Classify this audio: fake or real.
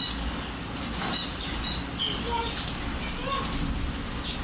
real